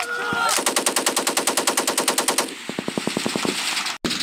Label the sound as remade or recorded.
recorded